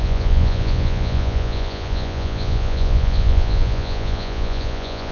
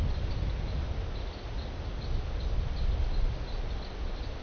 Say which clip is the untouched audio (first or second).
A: second